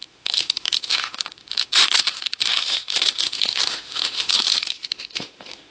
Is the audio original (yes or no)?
no